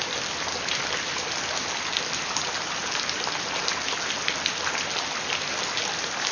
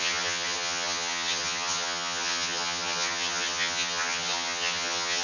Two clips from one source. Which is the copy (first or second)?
second